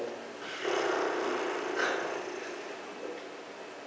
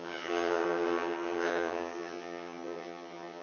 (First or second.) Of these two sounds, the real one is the first